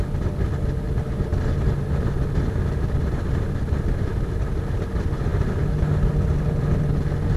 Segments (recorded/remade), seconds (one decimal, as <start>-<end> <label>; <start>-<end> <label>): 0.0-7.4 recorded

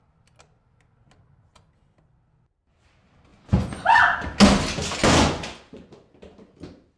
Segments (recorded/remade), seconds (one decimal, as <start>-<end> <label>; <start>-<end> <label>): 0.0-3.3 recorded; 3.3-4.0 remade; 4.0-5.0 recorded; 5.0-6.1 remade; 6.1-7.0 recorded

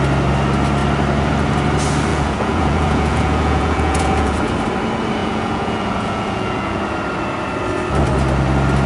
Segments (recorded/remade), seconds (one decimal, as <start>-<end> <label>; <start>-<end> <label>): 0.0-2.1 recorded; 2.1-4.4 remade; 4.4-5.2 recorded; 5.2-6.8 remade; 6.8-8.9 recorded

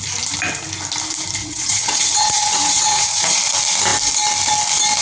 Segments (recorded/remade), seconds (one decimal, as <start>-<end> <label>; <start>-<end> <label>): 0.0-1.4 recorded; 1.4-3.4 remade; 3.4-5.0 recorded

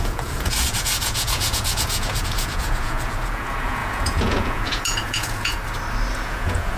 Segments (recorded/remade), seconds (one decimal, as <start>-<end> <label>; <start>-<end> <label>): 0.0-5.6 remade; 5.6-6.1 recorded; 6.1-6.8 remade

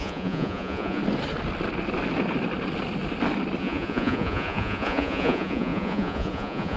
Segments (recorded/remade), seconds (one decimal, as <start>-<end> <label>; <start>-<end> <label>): 0.0-1.0 remade; 1.0-3.6 recorded; 3.6-6.8 remade

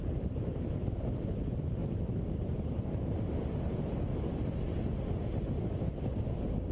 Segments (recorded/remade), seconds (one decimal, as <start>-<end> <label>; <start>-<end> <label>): 0.0-6.7 recorded

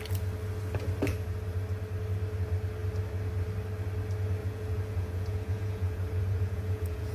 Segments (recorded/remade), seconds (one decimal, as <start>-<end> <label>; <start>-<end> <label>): 0.0-4.4 recorded; 4.4-7.1 remade